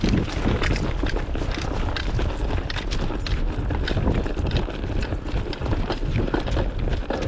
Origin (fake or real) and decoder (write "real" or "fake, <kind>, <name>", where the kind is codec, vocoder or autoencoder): real